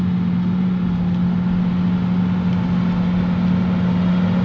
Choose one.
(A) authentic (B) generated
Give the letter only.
A